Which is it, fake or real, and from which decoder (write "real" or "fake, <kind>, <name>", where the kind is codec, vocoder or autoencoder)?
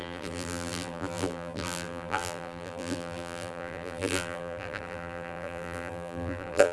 fake, vocoder, BigVGAN v2